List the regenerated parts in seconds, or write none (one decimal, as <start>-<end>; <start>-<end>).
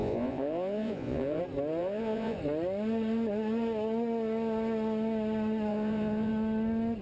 0.0-1.4; 1.8-2.4; 5.7-6.3